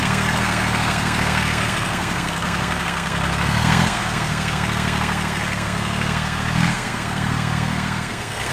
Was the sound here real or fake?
fake